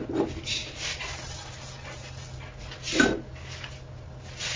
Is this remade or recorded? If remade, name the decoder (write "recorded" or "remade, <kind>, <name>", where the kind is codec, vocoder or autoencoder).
recorded